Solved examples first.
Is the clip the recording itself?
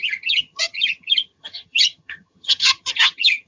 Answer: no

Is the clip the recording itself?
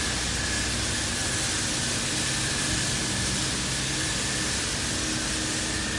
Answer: yes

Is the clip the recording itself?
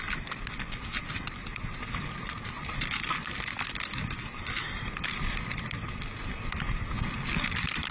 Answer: yes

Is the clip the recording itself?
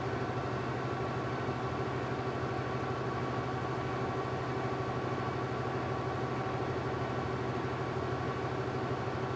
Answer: yes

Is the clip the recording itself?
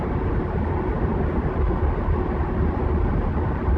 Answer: yes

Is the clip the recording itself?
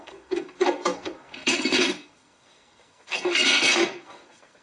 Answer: no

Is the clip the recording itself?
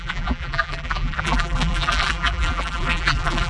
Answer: no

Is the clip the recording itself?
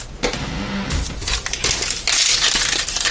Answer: yes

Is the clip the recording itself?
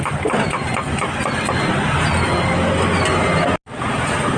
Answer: yes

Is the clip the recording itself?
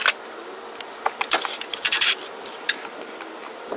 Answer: no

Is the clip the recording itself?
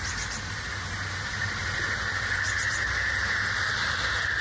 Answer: yes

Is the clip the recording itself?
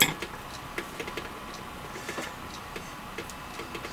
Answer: yes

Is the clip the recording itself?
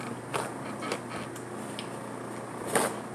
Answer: yes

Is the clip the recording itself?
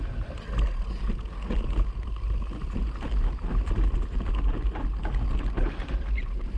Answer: yes